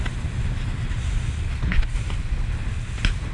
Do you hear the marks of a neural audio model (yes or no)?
no